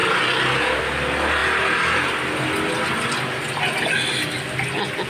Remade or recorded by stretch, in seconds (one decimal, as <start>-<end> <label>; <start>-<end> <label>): 0.0-5.1 recorded